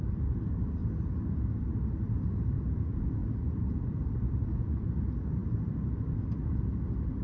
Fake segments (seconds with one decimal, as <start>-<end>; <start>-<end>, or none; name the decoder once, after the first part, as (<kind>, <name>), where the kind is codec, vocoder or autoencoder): 0.0-0.8 (vocoder, BigVGAN v2); 1.9-5.4; 6.4-7.2